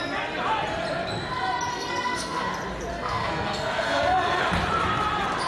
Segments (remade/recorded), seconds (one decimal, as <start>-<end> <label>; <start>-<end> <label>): 0.0-1.7 recorded; 1.7-2.5 remade; 2.5-2.9 recorded; 2.9-4.4 remade; 4.4-5.5 recorded